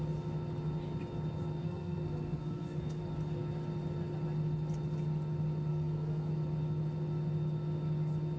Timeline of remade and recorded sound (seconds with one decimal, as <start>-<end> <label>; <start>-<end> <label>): 0.0-1.6 recorded; 1.6-3.0 remade; 3.0-5.7 recorded; 5.7-6.3 remade; 6.3-8.4 recorded